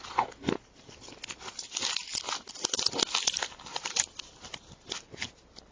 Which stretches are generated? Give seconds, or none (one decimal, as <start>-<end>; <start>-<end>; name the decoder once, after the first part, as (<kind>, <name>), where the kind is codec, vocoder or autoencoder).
none